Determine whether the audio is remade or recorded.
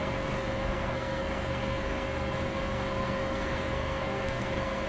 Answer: remade